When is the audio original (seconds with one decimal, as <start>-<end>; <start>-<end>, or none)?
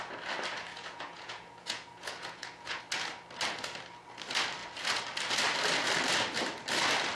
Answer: 0.0-0.7; 2.8-7.1